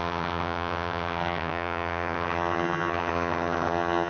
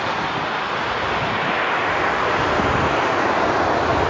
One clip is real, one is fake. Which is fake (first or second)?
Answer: first